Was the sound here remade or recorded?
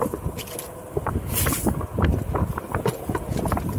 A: recorded